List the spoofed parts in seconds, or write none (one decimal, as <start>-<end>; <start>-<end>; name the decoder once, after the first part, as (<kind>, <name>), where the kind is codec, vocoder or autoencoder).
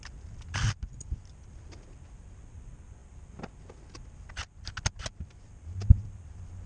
none